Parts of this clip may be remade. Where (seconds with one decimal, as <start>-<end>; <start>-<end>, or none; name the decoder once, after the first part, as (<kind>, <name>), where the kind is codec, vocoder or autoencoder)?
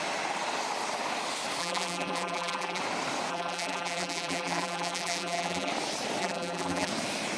1.6-2.8 (vocoder, BigVGAN v2); 3.3-5.7; 6.2-6.9